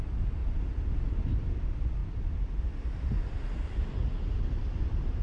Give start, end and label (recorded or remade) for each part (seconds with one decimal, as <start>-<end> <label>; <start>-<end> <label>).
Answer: 0.0-2.0 recorded; 2.0-2.6 remade; 2.6-3.2 recorded; 3.2-4.2 remade; 4.2-5.2 recorded